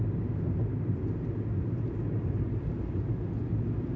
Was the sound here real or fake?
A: real